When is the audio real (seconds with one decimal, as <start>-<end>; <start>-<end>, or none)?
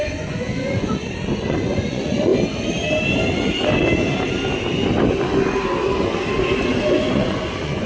2.3-6.9